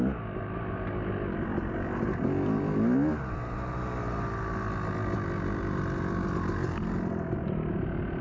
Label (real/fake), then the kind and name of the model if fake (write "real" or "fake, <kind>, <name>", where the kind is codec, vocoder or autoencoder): real